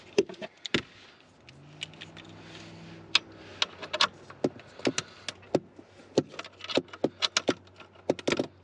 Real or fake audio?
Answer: real